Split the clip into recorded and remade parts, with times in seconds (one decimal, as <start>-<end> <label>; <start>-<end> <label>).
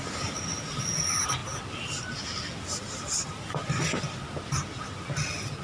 0.0-5.6 recorded